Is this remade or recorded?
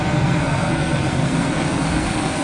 remade